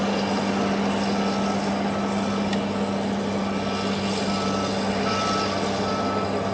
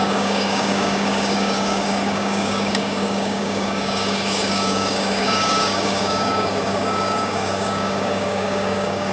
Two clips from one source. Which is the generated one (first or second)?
second